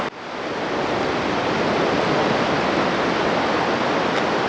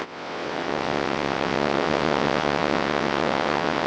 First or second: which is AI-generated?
second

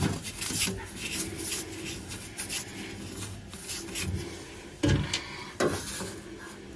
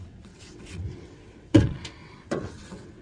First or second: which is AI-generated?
second